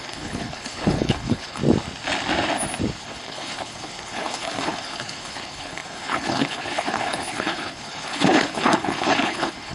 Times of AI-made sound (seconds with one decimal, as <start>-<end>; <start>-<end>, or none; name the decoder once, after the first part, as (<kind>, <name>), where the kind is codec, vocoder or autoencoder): 0.0-1.6 (codec, HILCodec); 3.0-9.7